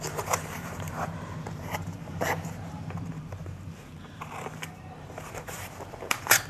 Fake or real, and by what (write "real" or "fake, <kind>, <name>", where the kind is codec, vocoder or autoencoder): fake, vocoder, BigVGAN v2